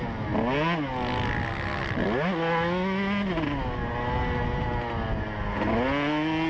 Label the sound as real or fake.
real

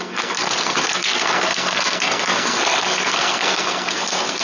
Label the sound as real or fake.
fake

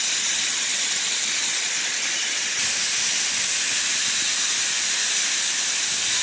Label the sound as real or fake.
real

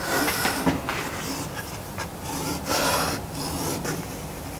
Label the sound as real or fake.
real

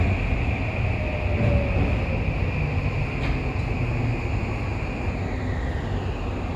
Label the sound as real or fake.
real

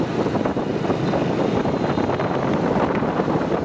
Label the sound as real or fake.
real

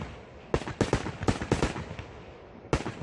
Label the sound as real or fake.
real